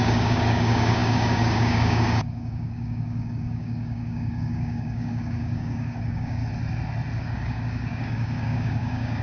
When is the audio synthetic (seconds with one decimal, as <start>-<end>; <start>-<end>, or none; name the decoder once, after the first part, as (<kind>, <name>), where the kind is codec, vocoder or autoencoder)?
0.0-6.4 (codec, DAC); 7.2-9.2